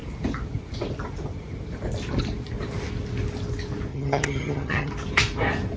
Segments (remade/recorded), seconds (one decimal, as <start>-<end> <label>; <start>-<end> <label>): 0.0-3.9 recorded; 3.9-4.9 remade; 4.9-5.8 recorded